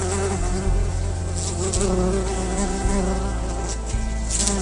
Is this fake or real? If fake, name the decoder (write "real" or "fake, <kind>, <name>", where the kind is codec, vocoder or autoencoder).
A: real